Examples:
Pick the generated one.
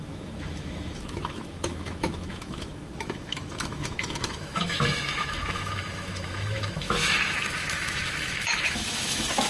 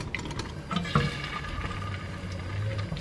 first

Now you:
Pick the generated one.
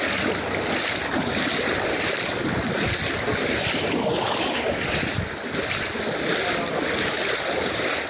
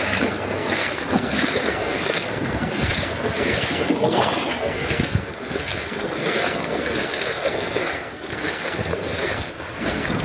second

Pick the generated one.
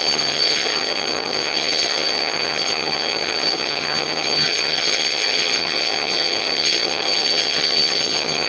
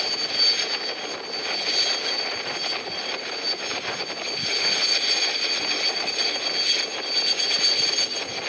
first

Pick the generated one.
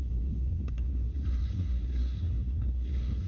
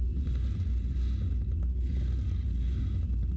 first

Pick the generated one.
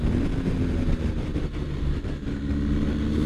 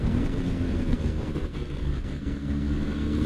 second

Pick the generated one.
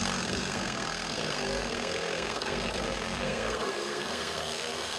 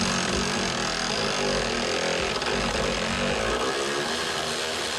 first